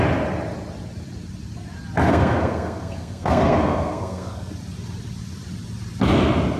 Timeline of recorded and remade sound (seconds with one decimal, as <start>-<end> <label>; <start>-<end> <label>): 0.0-2.1 recorded; 2.1-4.5 remade; 4.5-6.6 recorded